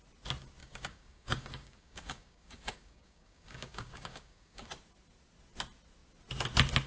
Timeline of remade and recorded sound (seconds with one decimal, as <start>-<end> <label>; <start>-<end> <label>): 0.0-0.6 recorded; 0.6-4.7 remade; 4.7-6.9 recorded